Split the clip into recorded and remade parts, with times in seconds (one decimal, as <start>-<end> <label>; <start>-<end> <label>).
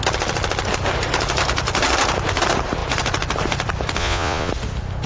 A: 0.0-4.0 recorded; 4.0-4.5 remade; 4.5-5.1 recorded